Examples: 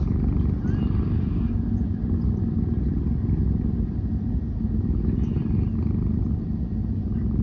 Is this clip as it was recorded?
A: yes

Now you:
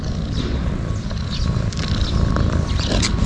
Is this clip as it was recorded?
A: yes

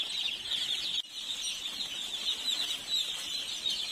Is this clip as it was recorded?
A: yes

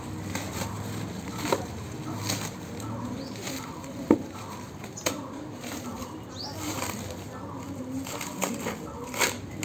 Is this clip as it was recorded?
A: no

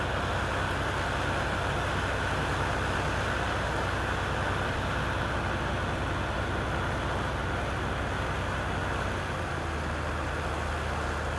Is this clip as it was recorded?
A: yes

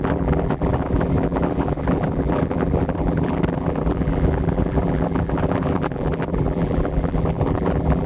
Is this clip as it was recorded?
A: no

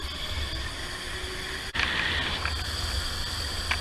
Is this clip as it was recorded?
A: yes